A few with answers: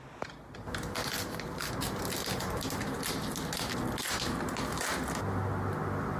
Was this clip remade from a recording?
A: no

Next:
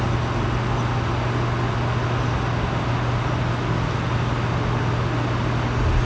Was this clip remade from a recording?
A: no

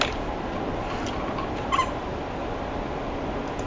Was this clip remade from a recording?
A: no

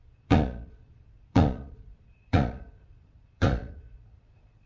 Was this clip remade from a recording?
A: yes